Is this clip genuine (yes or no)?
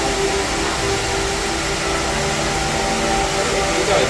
yes